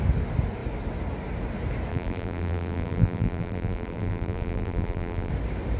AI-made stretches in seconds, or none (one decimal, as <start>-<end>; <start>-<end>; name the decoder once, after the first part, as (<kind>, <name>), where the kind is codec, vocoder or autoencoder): 1.9-5.3 (vocoder, BigVGAN v2)

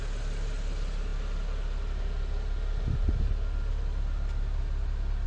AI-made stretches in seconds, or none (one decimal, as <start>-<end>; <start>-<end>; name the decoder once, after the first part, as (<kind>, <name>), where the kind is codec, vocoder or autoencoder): none

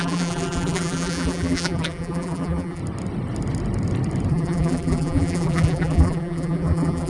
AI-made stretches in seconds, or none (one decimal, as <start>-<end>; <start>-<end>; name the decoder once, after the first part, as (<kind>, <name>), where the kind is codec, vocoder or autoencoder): 0.0-2.8 (vocoder, BigVGAN v2); 4.3-7.1

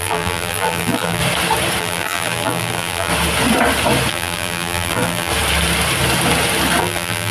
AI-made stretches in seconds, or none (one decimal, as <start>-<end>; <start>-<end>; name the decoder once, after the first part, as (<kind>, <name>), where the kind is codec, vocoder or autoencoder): 0.0-1.2 (vocoder, BigVGAN v2); 1.8-3.1; 4.1-5.3; 6.8-7.3

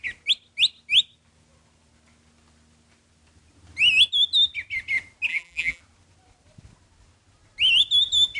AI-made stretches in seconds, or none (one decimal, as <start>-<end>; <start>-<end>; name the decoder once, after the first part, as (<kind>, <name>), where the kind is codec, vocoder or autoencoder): 5.3-5.8 (vocoder, BigVGAN v2)

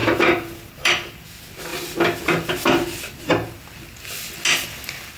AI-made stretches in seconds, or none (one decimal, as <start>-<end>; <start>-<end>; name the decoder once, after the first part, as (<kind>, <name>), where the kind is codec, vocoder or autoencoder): 0.0-0.9 (vocoder, BigVGAN v2)

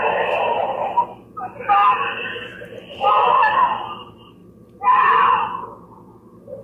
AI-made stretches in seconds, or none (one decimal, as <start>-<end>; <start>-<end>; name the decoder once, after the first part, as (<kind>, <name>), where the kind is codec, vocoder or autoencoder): 0.6-1.3 (vocoder, BigVGAN v2); 4.4-5.3